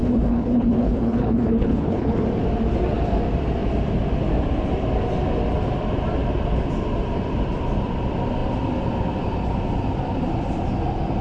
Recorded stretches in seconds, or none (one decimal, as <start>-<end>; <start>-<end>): 2.2-11.2